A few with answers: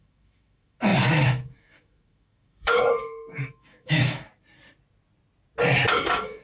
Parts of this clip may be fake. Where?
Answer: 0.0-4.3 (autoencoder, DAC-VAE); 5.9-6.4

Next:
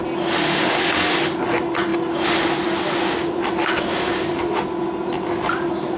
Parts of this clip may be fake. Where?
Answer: none